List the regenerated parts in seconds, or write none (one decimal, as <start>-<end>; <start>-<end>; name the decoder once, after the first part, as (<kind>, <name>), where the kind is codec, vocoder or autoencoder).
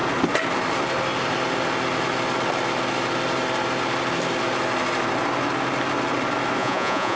6.6-7.2 (vocoder, Vocos)